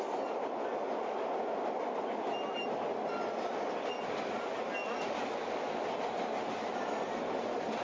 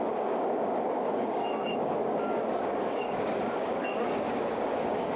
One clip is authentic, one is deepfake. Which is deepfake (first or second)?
second